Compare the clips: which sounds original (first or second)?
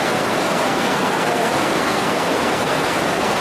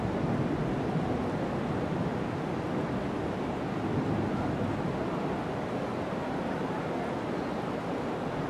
second